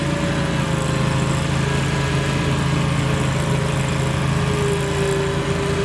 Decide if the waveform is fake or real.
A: real